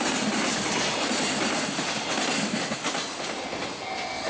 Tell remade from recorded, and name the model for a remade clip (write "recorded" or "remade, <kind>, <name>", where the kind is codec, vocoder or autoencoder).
recorded